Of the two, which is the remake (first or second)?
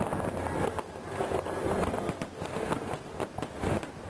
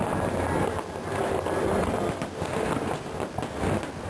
first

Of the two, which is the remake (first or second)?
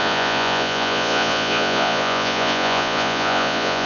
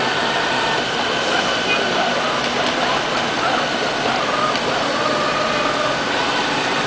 first